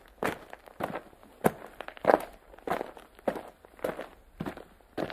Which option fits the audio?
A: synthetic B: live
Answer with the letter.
B